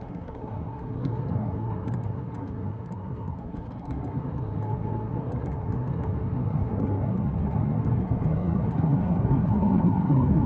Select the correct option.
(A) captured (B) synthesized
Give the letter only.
B